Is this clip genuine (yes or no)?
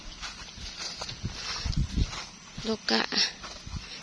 yes